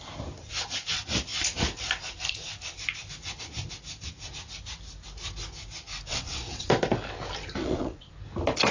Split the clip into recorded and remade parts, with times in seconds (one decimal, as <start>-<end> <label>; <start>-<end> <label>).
0.0-6.1 recorded; 6.1-6.7 remade; 6.7-7.6 recorded; 7.6-8.1 remade; 8.1-8.7 recorded